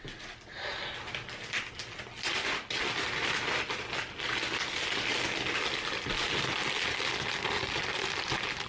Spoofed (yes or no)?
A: no